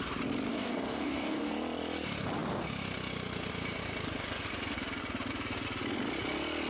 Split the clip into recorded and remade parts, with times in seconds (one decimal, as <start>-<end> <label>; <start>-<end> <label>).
0.0-0.5 recorded; 0.5-1.5 remade; 1.5-6.7 recorded